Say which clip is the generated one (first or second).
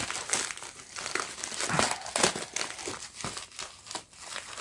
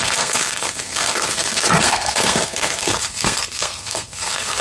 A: second